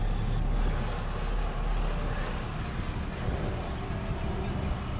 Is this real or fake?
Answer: real